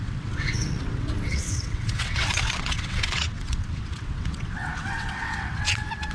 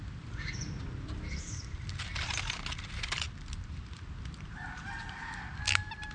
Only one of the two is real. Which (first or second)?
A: second